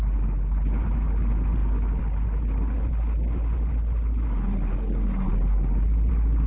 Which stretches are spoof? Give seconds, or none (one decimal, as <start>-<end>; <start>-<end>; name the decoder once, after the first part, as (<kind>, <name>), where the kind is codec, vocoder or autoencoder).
none